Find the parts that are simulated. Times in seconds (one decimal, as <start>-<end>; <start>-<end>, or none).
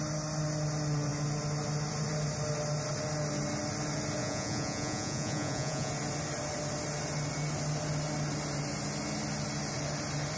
4.2-5.9